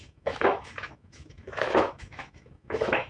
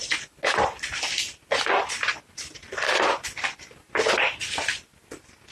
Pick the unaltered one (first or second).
second